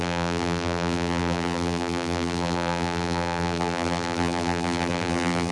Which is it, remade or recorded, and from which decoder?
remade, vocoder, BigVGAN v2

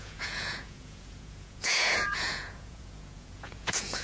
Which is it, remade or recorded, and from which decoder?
remade, vocoder, Vocos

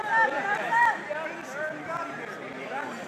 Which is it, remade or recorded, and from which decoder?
recorded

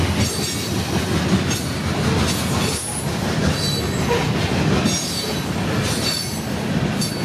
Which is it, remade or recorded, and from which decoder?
recorded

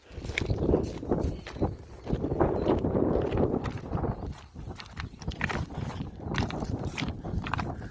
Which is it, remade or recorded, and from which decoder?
remade, vocoder, BigVGAN v2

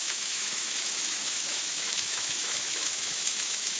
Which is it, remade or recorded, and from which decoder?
remade, autoencoder, DAC-VAE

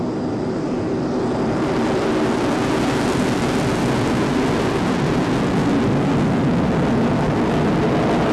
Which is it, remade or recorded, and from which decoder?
recorded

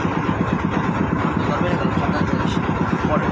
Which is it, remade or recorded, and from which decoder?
recorded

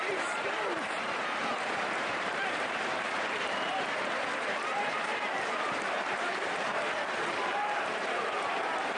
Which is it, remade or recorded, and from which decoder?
remade, vocoder, BigVGAN v2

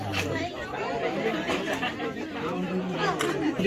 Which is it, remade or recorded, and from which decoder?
remade, vocoder, BigVGAN v2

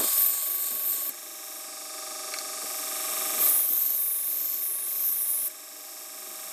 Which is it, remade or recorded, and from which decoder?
recorded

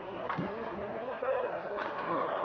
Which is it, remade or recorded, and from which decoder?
remade, codec, SNAC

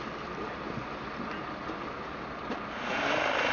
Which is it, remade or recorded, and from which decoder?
recorded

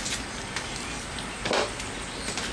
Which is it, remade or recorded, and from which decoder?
recorded